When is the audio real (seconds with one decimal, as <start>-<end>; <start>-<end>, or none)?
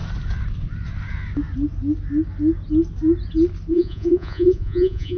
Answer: 0.0-3.7